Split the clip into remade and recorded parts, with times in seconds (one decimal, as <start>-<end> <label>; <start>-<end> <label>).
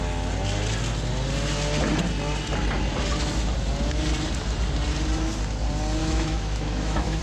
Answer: 0.0-6.0 recorded; 6.0-7.2 remade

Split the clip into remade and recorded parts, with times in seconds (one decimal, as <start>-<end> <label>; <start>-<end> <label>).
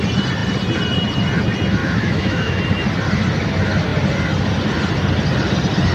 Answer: 0.0-1.8 recorded; 1.8-2.6 remade; 2.6-5.9 recorded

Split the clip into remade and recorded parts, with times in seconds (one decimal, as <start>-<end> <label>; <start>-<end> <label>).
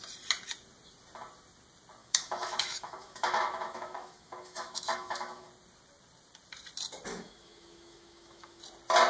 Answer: 0.0-2.0 recorded; 2.0-5.5 remade; 5.5-7.1 recorded; 7.1-8.6 remade; 8.6-9.1 recorded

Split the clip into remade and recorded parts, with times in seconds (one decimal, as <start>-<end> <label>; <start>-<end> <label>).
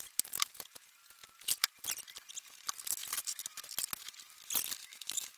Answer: 0.0-4.8 recorded; 4.8-5.4 remade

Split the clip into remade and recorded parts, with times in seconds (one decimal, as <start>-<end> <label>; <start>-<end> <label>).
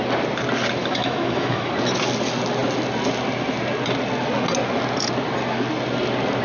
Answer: 0.0-0.8 recorded; 0.8-1.7 remade; 1.7-6.4 recorded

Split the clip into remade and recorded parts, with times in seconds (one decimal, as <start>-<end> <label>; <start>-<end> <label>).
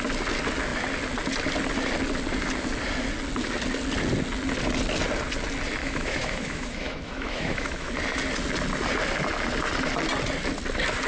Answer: 0.0-5.8 recorded; 5.8-7.9 remade; 7.9-11.1 recorded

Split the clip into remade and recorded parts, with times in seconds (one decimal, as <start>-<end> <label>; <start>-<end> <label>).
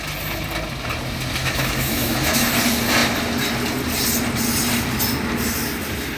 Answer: 0.0-1.4 recorded; 1.4-2.5 remade; 2.5-6.2 recorded